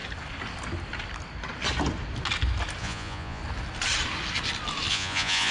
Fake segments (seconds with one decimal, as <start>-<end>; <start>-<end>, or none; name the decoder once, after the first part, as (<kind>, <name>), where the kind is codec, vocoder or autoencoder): 2.8-3.4 (vocoder, Vocos); 4.9-5.5